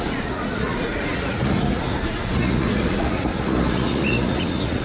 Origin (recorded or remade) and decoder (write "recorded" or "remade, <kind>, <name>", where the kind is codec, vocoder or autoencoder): remade, vocoder, Vocos